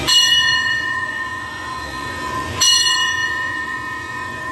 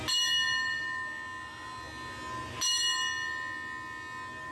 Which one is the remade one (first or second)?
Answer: first